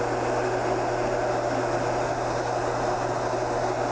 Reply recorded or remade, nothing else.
recorded